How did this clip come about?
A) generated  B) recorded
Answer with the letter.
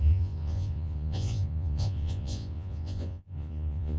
A